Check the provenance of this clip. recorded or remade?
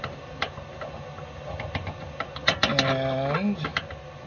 recorded